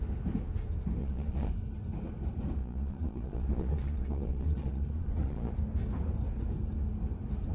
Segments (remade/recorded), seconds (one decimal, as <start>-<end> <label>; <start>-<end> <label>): 0.0-1.0 recorded; 1.0-1.5 remade; 1.5-2.6 recorded; 2.6-5.5 remade; 5.5-7.5 recorded